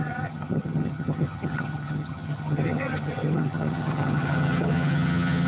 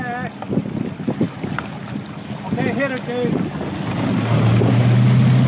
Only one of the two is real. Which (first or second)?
second